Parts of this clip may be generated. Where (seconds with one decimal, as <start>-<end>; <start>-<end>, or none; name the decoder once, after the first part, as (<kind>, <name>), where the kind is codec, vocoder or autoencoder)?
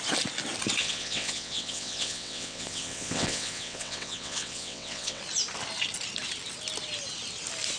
0.8-5.2 (vocoder, WaveNeXt)